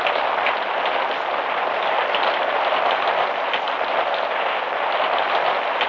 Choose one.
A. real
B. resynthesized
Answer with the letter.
A